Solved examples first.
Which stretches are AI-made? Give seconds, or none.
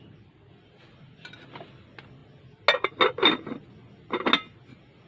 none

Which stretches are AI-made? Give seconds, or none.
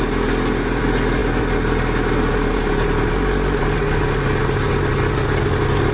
none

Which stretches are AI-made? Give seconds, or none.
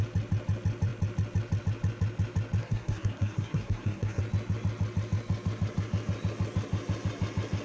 2.6-4.2 (codec, SNAC)